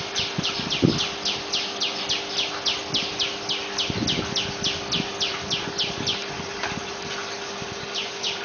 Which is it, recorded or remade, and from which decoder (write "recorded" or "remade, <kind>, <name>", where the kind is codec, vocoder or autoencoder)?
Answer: recorded